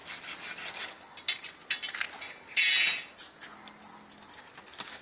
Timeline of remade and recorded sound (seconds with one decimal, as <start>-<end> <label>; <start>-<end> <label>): 0.0-5.0 recorded